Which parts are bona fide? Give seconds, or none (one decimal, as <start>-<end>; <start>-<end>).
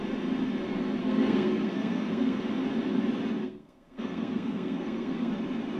0.0-1.0; 2.4-3.4; 5.3-5.8